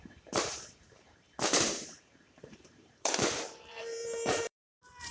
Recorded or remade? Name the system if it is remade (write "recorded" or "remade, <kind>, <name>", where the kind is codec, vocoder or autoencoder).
remade, vocoder, BigVGAN v2